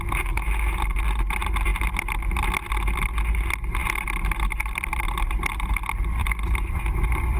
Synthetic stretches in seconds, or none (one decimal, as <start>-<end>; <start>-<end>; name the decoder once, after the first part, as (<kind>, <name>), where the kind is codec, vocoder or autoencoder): 3.8-5.7 (vocoder, BigVGAN v2); 6.2-7.4